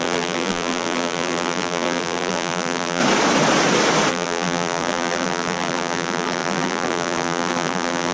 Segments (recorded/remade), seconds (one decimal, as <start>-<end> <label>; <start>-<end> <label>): 0.0-3.0 remade; 3.0-4.1 recorded; 4.1-8.1 remade